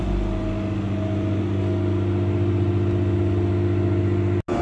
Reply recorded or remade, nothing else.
recorded